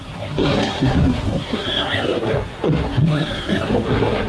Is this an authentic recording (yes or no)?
no